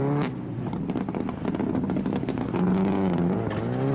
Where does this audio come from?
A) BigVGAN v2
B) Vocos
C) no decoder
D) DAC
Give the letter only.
C